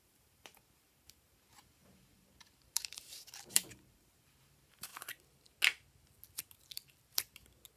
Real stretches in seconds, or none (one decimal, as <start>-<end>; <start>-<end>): 4.9-7.8